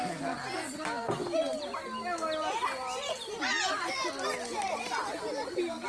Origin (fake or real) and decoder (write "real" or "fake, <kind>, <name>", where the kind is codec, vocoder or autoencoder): real